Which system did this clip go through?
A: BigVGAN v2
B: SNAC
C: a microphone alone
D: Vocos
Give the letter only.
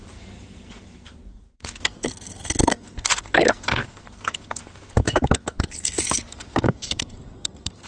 B